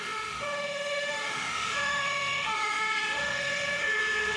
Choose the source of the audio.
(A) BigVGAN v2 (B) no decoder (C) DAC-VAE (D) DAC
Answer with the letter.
C